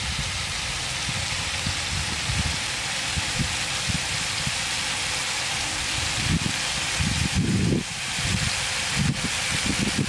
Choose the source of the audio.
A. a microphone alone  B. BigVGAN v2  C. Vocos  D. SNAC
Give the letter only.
A